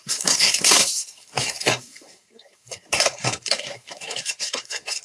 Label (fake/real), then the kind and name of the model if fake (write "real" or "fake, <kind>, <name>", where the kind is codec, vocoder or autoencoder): fake, codec, SNAC